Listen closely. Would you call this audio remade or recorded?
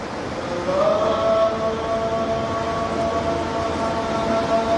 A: recorded